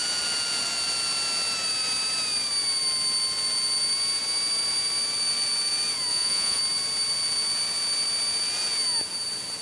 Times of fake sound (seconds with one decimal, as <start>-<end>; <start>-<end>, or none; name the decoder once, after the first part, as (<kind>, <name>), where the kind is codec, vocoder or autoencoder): 6.1-6.6 (vocoder, Vocos)